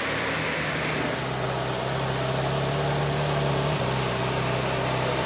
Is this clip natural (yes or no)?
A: yes